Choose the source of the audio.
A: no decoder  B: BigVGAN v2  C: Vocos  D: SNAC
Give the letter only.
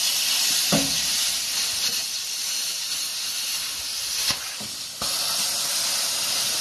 A